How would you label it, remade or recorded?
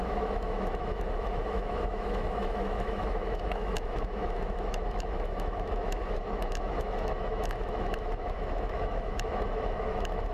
remade